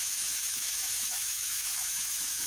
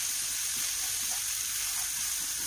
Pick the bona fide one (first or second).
second